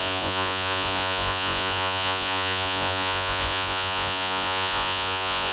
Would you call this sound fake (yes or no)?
yes